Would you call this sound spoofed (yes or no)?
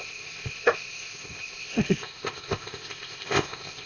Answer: yes